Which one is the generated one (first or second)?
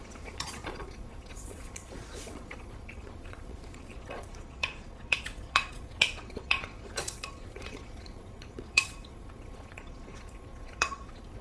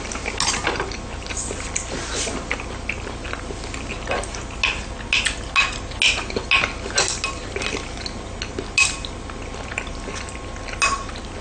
first